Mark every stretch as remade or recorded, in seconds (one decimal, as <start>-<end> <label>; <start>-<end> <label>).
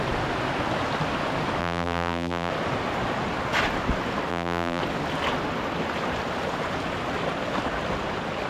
0.0-1.6 recorded; 1.6-2.5 remade; 2.5-4.3 recorded; 4.3-4.8 remade; 4.8-8.5 recorded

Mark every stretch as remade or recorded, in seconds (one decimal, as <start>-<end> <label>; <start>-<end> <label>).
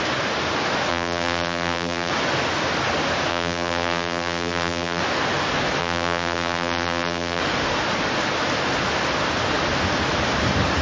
0.0-0.9 recorded; 0.9-2.1 remade; 2.1-3.3 recorded; 3.3-5.0 remade; 5.0-5.8 recorded; 5.8-7.4 remade; 7.4-10.8 recorded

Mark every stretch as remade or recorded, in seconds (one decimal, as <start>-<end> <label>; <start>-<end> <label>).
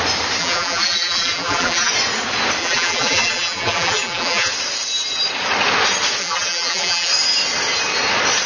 0.0-0.4 recorded; 0.4-1.9 remade; 1.9-2.6 recorded; 2.6-4.5 remade; 4.5-6.2 recorded; 6.2-7.1 remade; 7.1-8.5 recorded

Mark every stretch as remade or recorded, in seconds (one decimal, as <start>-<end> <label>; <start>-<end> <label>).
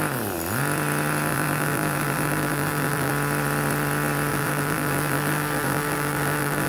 0.0-1.3 recorded; 1.3-3.1 remade; 3.1-4.3 recorded; 4.3-6.7 remade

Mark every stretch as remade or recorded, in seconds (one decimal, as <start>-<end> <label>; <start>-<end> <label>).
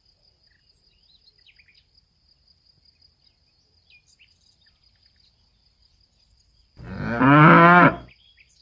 0.0-5.5 recorded; 5.5-7.9 remade; 7.9-8.6 recorded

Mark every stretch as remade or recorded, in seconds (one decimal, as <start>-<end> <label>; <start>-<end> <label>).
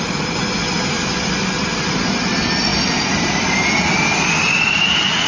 0.0-2.7 recorded; 2.7-3.7 remade; 3.7-5.3 recorded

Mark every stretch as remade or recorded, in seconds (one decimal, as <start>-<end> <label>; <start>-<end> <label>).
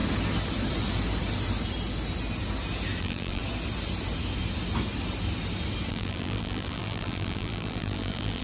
0.0-3.0 recorded; 3.0-3.4 remade; 3.4-5.9 recorded; 5.9-8.4 remade